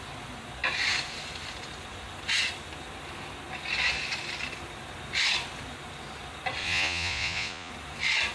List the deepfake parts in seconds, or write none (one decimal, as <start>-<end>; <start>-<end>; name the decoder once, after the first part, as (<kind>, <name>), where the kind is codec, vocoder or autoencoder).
6.6-7.7 (vocoder, Vocos)